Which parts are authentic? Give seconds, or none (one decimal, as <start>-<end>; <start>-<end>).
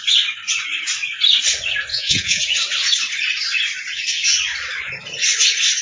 0.0-1.9; 2.4-5.8